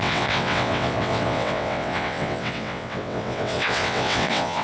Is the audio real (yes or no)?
no